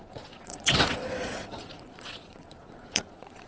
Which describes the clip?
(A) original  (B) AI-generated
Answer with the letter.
B